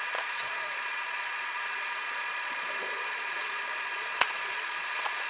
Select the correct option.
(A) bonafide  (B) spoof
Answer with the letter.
B